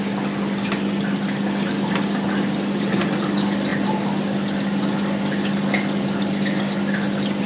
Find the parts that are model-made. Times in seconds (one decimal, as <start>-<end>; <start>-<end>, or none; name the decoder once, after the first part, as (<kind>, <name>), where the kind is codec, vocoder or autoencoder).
none

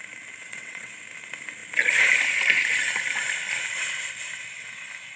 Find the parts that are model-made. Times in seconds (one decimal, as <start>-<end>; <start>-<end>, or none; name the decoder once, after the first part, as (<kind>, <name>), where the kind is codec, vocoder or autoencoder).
0.4-0.9 (vocoder, WaveNeXt)

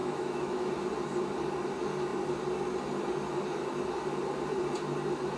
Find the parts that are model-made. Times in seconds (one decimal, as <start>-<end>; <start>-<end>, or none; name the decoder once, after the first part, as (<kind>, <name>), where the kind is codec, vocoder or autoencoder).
0.0-0.7 (autoencoder, DAC-VAE)

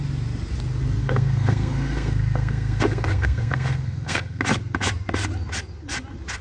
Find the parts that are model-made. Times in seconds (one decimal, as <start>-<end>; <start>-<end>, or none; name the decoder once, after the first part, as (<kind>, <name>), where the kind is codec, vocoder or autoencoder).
1.0-4.4 (codec, SNAC)